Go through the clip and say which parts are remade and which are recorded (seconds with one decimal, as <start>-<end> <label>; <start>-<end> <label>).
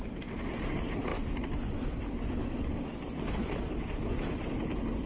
0.0-5.1 recorded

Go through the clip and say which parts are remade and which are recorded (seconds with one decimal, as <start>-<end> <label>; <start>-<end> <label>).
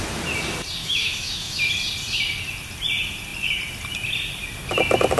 0.0-0.8 recorded; 0.8-1.7 remade; 1.7-5.2 recorded